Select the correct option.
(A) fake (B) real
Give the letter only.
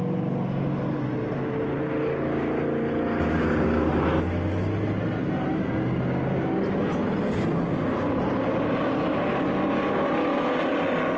B